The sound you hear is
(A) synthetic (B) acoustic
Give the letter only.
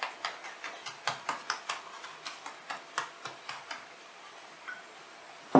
B